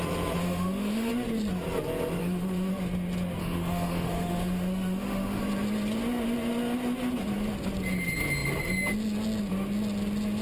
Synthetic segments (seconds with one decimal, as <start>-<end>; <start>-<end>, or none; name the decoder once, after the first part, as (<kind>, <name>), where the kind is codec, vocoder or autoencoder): 0.4-1.1 (autoencoder, DAC-VAE); 2.2-2.7; 3.4-5.4